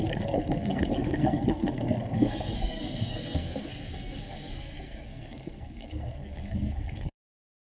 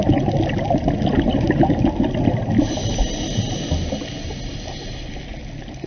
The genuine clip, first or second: second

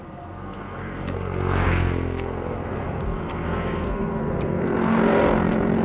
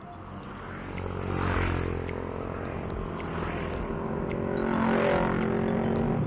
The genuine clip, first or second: second